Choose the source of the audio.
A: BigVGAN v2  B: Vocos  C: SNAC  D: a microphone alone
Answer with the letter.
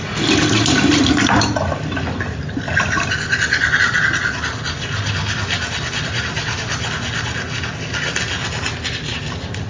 D